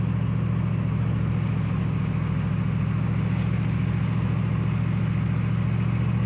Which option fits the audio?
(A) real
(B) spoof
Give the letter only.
A